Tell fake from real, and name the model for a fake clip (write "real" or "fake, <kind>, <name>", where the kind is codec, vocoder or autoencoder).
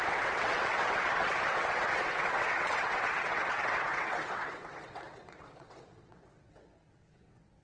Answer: fake, vocoder, WaveNeXt